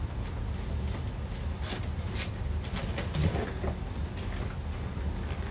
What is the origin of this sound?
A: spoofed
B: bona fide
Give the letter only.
B